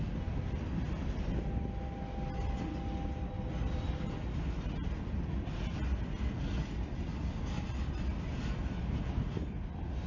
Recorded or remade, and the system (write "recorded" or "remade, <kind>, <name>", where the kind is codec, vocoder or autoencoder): recorded